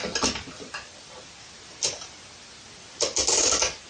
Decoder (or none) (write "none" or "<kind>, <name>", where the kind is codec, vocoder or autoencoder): none